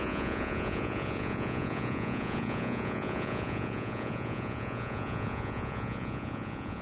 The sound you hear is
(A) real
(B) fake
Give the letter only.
B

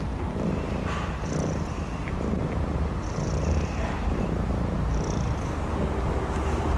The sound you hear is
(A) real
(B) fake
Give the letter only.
B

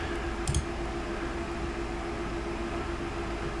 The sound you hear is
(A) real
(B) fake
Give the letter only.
A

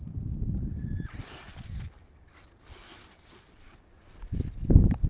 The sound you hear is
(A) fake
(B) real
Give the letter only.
B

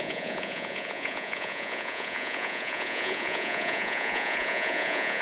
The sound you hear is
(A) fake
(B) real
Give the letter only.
A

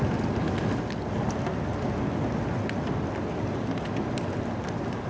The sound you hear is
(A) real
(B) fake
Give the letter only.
A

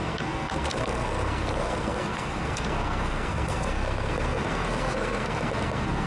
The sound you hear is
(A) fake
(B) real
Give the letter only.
A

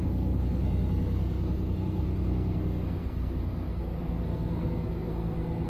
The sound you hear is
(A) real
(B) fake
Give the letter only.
B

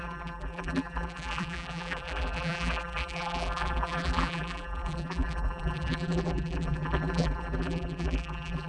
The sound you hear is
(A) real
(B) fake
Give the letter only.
B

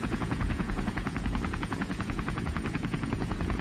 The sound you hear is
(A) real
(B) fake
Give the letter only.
B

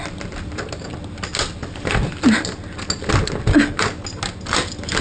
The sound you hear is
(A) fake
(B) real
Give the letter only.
B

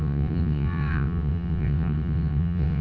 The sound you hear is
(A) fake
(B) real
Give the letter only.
A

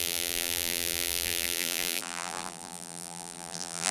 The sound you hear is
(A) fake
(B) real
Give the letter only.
A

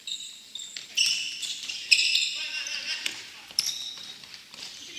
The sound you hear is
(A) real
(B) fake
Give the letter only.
A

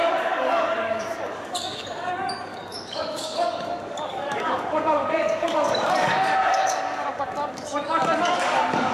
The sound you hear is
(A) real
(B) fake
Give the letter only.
B